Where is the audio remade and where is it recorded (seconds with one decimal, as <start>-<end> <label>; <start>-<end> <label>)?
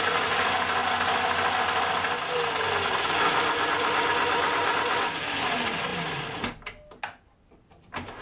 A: 0.0-8.2 recorded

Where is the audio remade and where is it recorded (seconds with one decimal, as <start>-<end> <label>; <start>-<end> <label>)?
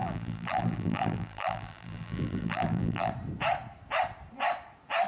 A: 0.0-3.1 remade; 3.1-5.1 recorded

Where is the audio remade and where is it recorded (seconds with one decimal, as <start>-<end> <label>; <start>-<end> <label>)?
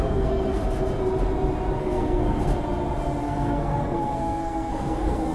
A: 0.0-0.6 remade; 0.6-1.8 recorded; 1.8-2.5 remade; 2.5-3.2 recorded; 3.2-5.3 remade